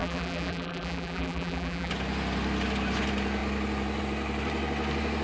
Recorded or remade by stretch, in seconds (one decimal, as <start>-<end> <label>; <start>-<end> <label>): 0.0-1.9 remade; 1.9-5.2 recorded